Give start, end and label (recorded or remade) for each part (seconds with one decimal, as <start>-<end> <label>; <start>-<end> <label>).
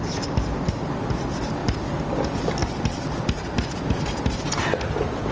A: 0.0-5.3 recorded